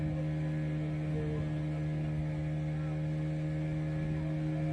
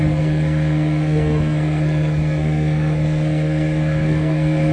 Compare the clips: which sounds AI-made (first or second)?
second